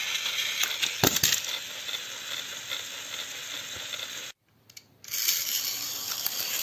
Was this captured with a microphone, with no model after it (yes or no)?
yes